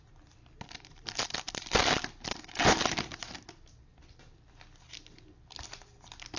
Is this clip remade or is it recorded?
recorded